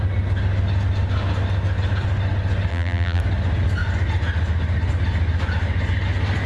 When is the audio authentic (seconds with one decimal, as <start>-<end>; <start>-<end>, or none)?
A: 0.0-2.7; 3.2-6.5